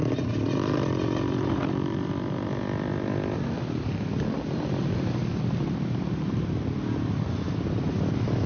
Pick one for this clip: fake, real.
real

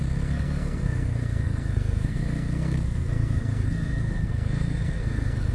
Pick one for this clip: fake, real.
fake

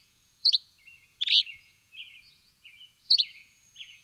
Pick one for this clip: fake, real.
fake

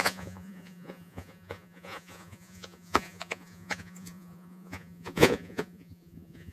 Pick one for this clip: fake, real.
fake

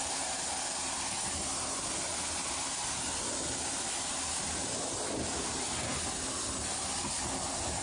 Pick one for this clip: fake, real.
real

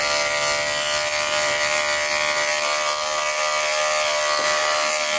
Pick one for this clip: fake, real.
real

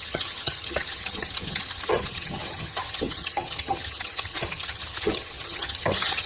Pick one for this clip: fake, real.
fake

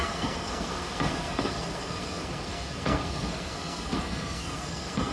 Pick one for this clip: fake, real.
fake